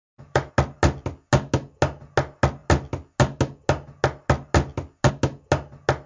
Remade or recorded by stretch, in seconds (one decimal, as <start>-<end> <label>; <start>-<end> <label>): 0.0-0.5 remade; 0.5-6.1 recorded